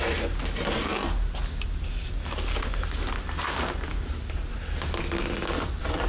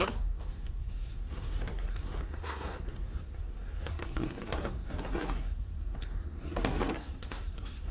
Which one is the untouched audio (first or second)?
first